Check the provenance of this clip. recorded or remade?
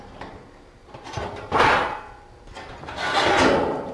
recorded